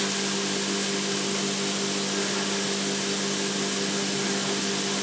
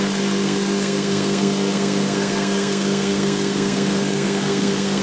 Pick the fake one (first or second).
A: second